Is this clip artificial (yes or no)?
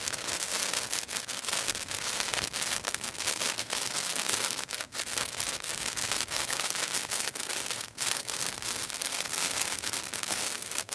yes